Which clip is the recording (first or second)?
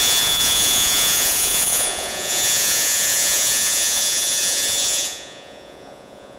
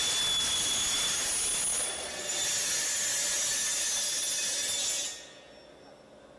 second